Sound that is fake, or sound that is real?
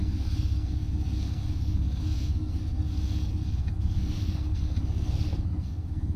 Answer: fake